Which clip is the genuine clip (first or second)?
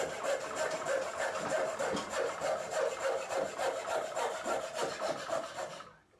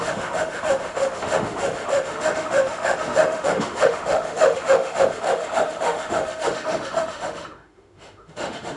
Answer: first